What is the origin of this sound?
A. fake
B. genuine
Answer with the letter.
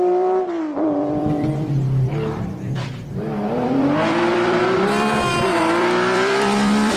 A